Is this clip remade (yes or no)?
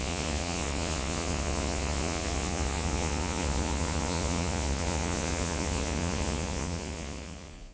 yes